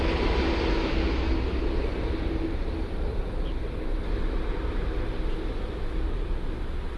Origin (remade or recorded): recorded